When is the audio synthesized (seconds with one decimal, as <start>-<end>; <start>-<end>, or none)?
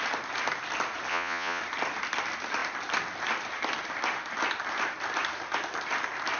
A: 1.1-1.6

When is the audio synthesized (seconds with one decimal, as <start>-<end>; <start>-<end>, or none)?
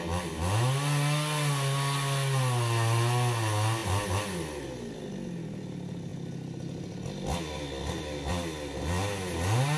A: none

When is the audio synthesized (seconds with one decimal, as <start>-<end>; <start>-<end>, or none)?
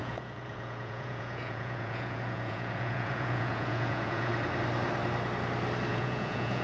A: 0.0-4.3; 5.9-6.6